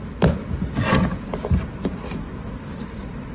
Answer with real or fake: real